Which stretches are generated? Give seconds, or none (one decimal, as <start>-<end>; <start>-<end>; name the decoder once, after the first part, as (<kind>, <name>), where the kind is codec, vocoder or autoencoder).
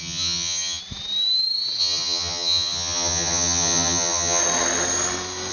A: 0.0-0.8 (vocoder, HiFi-GAN); 1.8-4.4